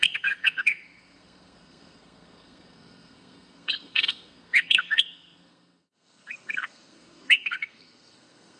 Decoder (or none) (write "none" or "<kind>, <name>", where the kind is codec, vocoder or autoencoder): codec, SNAC